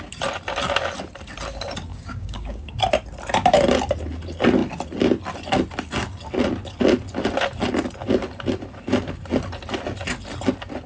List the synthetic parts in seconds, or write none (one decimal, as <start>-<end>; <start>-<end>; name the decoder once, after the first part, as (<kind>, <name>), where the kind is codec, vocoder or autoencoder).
1.9-2.8 (codec, DAC)

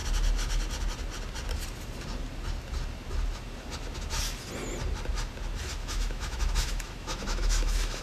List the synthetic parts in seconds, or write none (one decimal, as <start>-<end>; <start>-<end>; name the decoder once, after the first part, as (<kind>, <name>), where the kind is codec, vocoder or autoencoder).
5.8-8.0 (autoencoder, DAC-VAE)

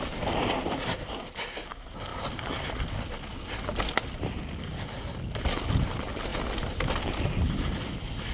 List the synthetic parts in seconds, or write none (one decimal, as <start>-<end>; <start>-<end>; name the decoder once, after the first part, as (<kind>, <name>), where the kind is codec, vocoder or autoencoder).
6.3-6.9 (vocoder, BigVGAN v2)

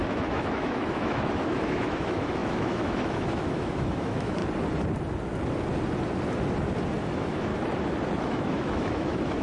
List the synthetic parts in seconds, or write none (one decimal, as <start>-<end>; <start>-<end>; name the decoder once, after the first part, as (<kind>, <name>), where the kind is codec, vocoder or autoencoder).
0.0-4.4 (autoencoder, DAC-VAE); 7.1-7.5; 8.2-9.4

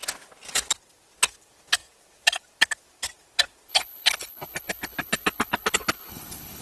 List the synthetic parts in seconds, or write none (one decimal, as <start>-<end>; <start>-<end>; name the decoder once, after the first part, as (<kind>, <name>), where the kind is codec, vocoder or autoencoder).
3.7-6.6 (codec, HILCodec)

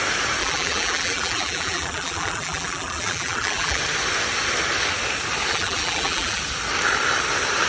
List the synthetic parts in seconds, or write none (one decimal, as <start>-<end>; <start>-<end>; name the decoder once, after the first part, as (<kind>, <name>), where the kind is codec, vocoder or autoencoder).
0.4-3.8 (vocoder, BigVGAN v2); 5.5-6.4

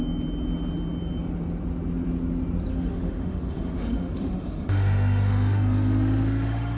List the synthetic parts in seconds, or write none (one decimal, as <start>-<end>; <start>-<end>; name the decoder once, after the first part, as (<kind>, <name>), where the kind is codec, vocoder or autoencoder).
2.7-6.8 (autoencoder, DAC-VAE)

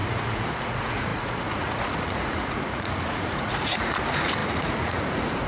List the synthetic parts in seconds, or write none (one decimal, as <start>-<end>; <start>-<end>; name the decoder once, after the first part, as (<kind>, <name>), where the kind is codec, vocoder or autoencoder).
0.0-5.5 (vocoder, Vocos)